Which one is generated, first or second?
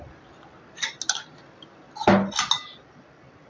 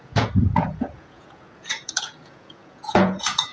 second